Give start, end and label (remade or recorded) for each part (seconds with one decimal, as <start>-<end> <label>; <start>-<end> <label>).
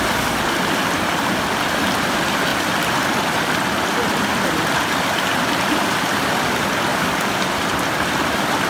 0.0-6.9 recorded; 6.9-7.4 remade; 7.4-8.7 recorded